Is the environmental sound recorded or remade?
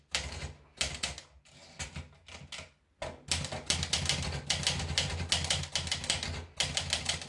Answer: recorded